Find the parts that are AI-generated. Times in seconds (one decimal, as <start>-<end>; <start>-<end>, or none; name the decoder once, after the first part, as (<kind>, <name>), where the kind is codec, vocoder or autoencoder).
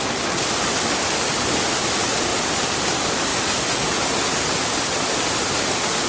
2.3-2.8 (vocoder, BigVGAN v2)